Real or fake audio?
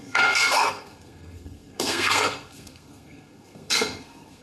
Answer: fake